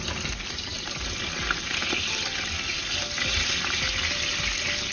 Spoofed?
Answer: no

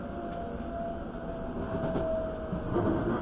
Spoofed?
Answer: no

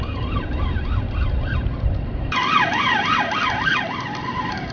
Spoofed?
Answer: no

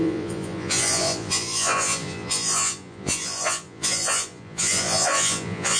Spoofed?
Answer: yes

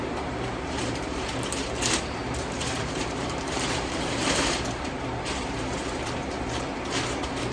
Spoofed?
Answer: yes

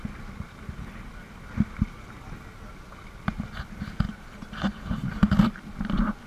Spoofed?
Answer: no